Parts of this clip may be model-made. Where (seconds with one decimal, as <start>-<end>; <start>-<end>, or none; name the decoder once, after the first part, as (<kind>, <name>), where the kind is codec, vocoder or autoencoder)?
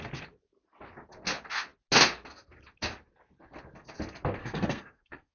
4.4-5.3 (codec, SNAC)